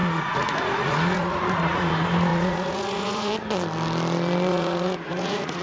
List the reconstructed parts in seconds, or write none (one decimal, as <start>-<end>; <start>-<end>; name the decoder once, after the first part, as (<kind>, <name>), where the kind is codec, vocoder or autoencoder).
0.0-1.9 (vocoder, Vocos); 2.3-3.3; 4.5-5.6